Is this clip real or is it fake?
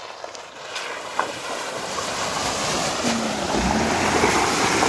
real